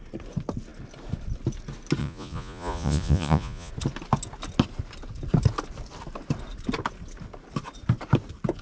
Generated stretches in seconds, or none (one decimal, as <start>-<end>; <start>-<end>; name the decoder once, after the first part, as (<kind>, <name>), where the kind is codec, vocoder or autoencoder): 2.0-3.7 (vocoder, Vocos)